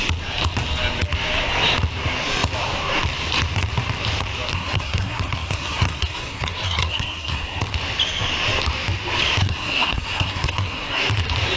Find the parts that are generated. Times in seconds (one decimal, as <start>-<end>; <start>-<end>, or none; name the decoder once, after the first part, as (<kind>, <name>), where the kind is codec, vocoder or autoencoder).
4.5-7.6 (codec, SNAC); 9.4-11.0